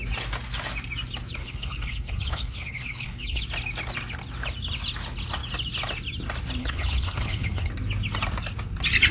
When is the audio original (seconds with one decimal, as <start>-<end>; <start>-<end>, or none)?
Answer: 0.0-1.4; 3.4-6.6; 7.7-9.1

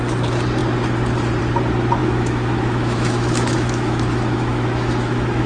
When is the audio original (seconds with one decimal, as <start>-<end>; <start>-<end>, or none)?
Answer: 0.0-2.0

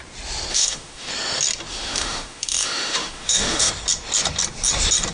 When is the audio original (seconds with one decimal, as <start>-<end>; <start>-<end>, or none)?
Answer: 0.0-0.5; 1.1-1.7; 3.7-5.1

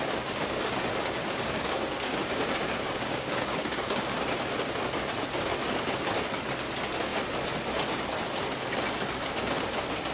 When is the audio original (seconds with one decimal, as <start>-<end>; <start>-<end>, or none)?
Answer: 0.0-1.2; 4.1-10.1

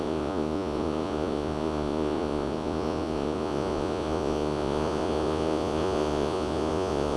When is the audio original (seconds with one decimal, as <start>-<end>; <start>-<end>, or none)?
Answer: none

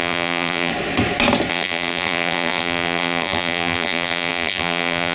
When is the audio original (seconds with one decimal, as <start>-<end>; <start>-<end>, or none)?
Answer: 0.7-1.5